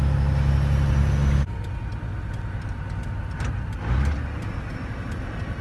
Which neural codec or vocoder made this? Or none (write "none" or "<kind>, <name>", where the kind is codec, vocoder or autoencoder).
none